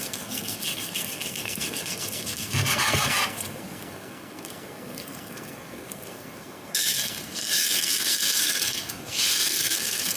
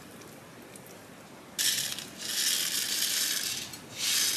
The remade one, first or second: first